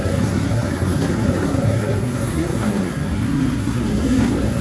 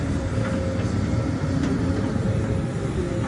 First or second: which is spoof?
first